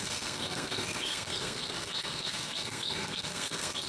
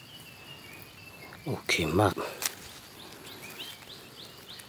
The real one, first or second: second